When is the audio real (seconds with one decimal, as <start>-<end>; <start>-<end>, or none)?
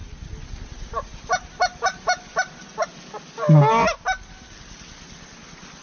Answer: 0.0-5.8